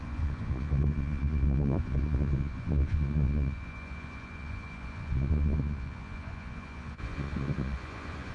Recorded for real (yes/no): no